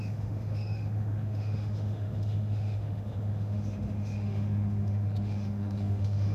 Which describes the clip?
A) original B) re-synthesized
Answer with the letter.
B